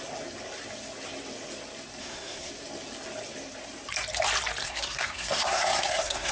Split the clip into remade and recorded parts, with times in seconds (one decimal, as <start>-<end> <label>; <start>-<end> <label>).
0.0-2.0 recorded; 2.0-2.5 remade; 2.5-4.6 recorded; 4.6-6.3 remade